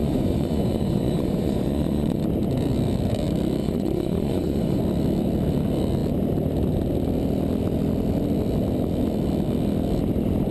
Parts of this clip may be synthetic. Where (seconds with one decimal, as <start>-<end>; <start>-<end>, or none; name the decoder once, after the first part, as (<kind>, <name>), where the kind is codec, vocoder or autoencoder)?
0.0-2.2 (vocoder, Vocos); 3.6-4.8